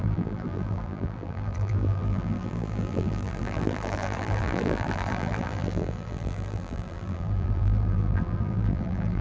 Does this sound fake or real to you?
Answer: fake